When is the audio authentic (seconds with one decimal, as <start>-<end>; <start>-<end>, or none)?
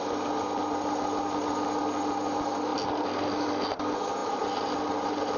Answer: 0.0-5.4